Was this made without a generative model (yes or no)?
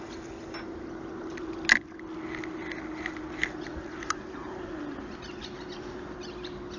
yes